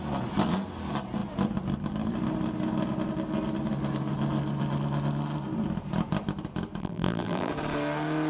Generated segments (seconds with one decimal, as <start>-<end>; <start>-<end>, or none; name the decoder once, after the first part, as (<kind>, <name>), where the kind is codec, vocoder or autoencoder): 6.8-7.5 (vocoder, BigVGAN v2)